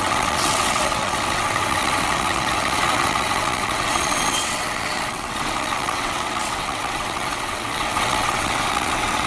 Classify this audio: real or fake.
fake